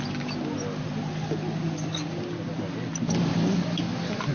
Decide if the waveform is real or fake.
real